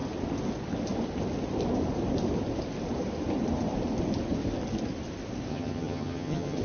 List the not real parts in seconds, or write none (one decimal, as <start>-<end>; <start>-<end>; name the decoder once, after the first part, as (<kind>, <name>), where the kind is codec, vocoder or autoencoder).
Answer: 5.5-6.6 (vocoder, HiFi-GAN)